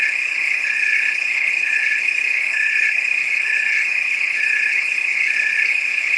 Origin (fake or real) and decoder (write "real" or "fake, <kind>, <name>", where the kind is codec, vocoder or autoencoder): fake, codec, HILCodec